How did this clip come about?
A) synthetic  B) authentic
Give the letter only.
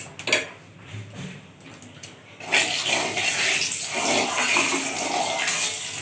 B